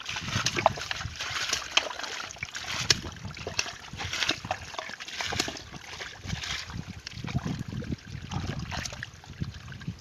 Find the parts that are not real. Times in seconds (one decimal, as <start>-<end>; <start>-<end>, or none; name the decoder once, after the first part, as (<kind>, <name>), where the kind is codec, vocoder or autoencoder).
0.5-1.6 (vocoder, BigVGAN v2)